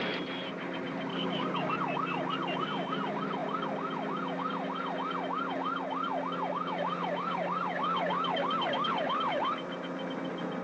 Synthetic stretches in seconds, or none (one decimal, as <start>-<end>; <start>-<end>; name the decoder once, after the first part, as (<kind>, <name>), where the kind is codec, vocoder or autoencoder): 1.1-1.7 (codec, DAC)